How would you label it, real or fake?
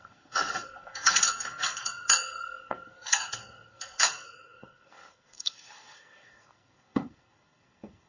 fake